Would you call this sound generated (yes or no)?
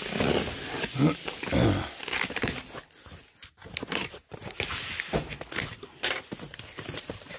no